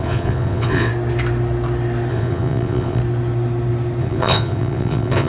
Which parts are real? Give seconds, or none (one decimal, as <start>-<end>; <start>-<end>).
0.9-2.1; 3.0-4.0